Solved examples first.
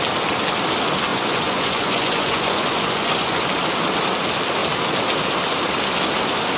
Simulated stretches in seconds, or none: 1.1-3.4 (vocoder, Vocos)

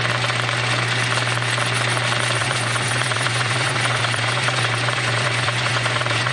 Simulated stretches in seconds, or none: 2.4-6.3 (vocoder, Vocos)

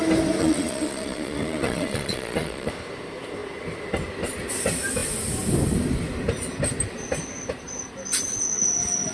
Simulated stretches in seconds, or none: 0.4-2.7 (vocoder, Vocos)

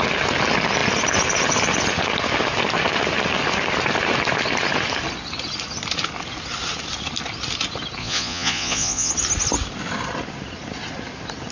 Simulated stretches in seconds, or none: 8.0-9.1 (vocoder, Vocos)